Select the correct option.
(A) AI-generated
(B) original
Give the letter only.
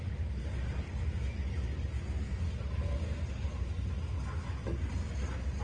B